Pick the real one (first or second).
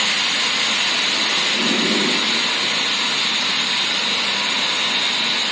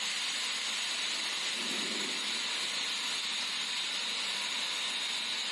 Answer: first